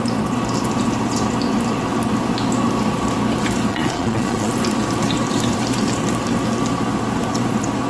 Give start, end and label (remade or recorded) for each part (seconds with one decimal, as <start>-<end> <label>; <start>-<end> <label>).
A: 0.0-3.7 recorded; 3.7-4.5 remade; 4.5-7.9 recorded

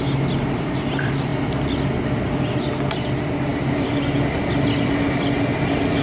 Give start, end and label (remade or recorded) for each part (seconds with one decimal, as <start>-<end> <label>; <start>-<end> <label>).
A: 0.0-6.0 recorded

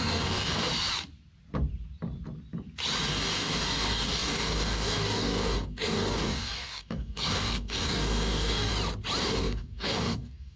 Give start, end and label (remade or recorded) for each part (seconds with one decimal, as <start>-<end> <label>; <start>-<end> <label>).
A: 0.0-0.7 remade; 0.7-3.1 recorded; 3.1-8.7 remade; 8.7-9.2 recorded; 9.2-10.6 remade

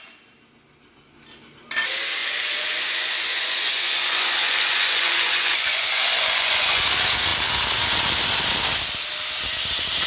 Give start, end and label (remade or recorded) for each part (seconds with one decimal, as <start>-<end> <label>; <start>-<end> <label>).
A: 0.0-2.2 recorded; 2.2-6.8 remade; 6.8-10.1 recorded

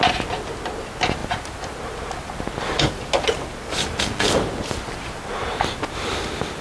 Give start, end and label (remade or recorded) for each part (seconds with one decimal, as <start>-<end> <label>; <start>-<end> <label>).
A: 0.0-6.6 recorded

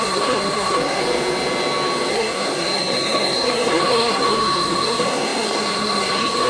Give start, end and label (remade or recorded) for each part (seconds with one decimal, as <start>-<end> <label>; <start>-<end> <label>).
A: 0.0-1.0 remade; 1.0-2.1 recorded; 2.1-6.5 remade

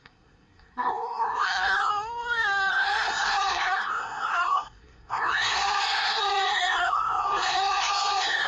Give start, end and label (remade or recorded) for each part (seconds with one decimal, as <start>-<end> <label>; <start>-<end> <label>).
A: 0.0-1.9 remade; 1.9-2.7 recorded; 2.7-8.5 remade